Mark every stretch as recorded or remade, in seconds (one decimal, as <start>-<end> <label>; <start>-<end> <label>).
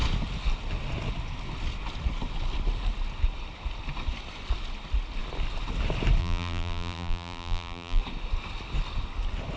0.0-6.2 recorded; 6.2-8.0 remade; 8.0-9.6 recorded